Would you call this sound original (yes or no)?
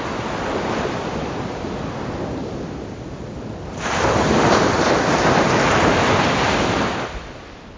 yes